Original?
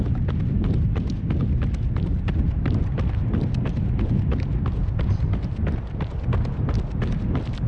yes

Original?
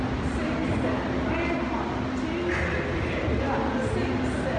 yes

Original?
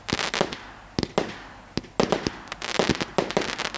yes